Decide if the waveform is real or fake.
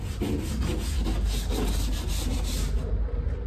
real